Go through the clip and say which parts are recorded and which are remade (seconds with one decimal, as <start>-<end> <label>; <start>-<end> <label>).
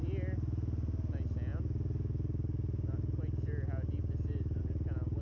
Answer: 0.0-5.2 recorded